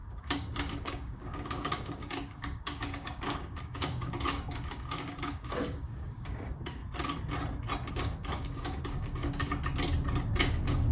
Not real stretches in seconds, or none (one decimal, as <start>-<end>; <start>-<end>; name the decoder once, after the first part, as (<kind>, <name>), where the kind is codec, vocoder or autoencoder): 0.0-6.8 (codec, DAC); 7.9-9.4; 10.2-10.9